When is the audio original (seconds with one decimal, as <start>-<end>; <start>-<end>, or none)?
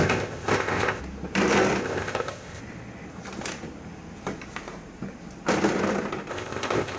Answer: 1.0-1.8; 2.6-6.3